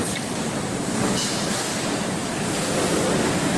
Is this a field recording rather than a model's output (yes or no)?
yes